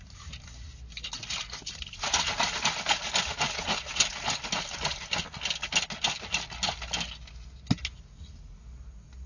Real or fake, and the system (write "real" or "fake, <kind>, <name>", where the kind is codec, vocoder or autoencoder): real